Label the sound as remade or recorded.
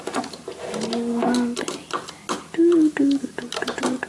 recorded